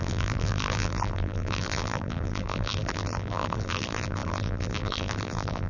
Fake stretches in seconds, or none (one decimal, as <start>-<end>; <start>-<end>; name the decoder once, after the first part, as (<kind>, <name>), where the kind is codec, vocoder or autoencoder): 0.0-5.7 (vocoder, BigVGAN v2)